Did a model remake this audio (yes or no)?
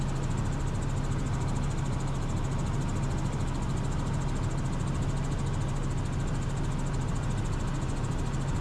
no